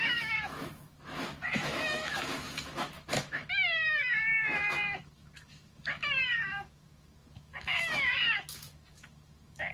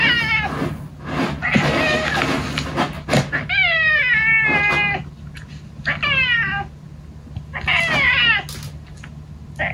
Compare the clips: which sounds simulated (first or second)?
first